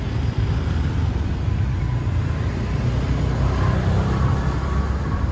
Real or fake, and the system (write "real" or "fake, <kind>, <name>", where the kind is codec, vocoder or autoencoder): real